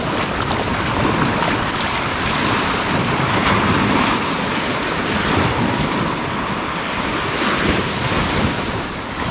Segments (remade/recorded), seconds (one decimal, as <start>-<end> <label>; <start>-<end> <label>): 0.0-3.4 remade; 3.4-7.6 recorded; 7.6-9.3 remade